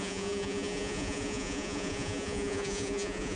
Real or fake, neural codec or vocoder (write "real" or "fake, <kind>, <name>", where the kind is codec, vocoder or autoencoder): fake, vocoder, Vocos